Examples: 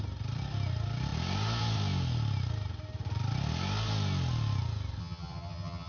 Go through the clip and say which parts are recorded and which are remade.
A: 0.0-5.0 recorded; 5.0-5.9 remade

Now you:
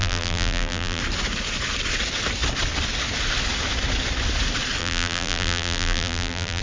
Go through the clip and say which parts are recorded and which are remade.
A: 0.0-1.0 remade; 1.0-4.8 recorded; 4.8-6.6 remade

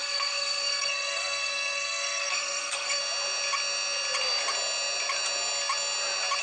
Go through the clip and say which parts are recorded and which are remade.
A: 0.0-3.0 remade; 3.0-6.4 recorded

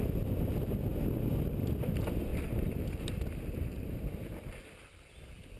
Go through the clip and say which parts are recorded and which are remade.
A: 0.0-0.9 remade; 0.9-2.3 recorded; 2.3-4.4 remade; 4.4-5.6 recorded

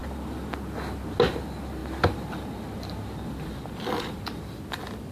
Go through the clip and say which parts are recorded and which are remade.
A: 0.0-0.5 remade; 0.5-1.8 recorded; 1.8-4.4 remade; 4.4-5.1 recorded

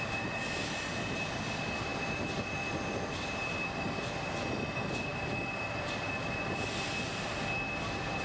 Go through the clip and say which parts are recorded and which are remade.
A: 0.0-8.2 recorded

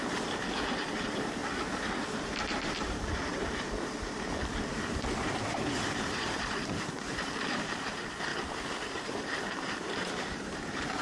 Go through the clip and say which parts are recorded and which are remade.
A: 0.0-1.4 remade; 1.4-2.4 recorded; 2.4-8.3 remade; 8.3-8.9 recorded; 8.9-11.0 remade

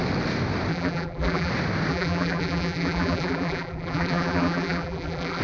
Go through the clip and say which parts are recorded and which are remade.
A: 0.0-0.7 recorded; 0.7-1.5 remade; 1.5-1.9 recorded; 1.9-5.4 remade